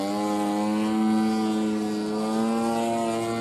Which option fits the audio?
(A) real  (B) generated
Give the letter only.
A